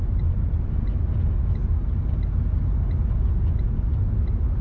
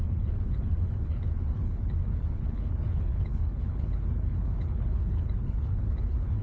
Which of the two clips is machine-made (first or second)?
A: second